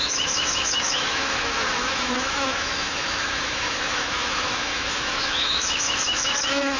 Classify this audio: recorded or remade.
remade